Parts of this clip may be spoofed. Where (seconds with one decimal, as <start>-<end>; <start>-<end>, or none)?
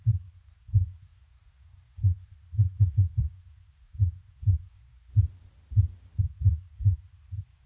0.0-5.1; 6.2-7.7